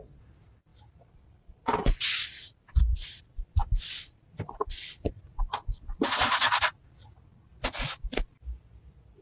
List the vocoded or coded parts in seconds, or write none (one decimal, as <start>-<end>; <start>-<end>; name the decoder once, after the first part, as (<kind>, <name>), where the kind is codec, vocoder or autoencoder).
none